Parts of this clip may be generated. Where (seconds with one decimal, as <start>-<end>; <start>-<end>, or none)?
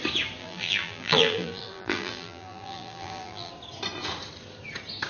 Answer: 0.4-3.5